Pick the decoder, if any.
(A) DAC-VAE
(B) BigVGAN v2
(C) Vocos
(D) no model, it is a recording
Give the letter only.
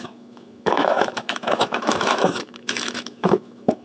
A